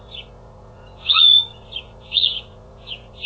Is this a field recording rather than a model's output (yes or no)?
no